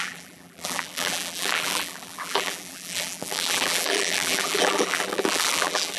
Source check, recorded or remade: remade